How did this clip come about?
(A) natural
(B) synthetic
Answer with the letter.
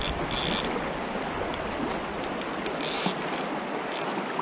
A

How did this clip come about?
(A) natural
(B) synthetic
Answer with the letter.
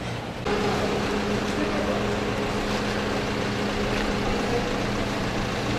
A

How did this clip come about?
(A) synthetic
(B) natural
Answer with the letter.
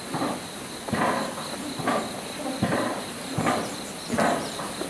B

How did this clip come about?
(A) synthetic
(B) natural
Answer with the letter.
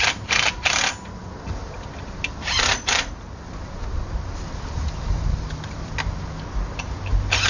B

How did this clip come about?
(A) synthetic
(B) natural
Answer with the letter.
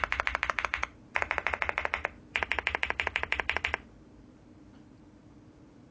A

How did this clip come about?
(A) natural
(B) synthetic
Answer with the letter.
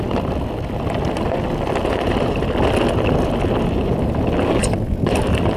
A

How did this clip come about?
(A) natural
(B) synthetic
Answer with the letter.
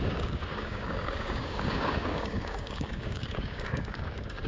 B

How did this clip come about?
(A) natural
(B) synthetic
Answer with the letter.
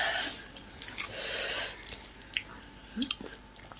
A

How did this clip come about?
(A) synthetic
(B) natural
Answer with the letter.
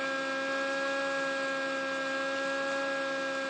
B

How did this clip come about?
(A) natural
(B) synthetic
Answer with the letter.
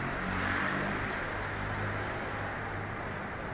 A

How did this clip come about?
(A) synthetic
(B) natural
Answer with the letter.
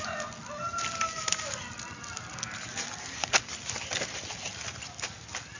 B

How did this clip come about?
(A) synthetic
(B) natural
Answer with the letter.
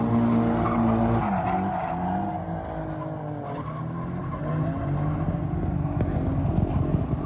B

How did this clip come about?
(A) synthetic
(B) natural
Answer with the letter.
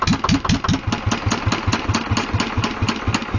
B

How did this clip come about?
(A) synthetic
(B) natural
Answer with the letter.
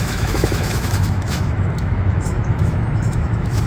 A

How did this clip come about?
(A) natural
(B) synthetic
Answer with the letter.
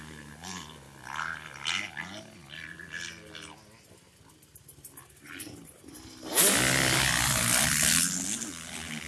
A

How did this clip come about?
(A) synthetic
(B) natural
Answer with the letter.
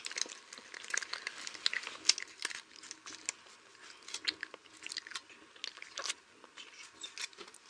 B